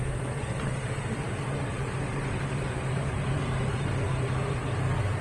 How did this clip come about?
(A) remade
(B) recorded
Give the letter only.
B